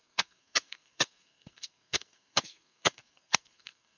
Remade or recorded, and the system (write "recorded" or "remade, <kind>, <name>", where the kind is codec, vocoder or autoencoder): remade, codec, SNAC